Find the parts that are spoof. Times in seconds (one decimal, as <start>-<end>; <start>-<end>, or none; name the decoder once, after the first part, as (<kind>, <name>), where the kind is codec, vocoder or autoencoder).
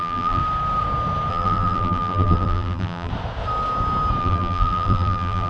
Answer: 0.0-0.4 (vocoder, BigVGAN v2); 1.3-3.1; 4.2-5.5